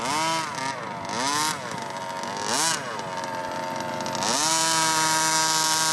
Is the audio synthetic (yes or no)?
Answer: no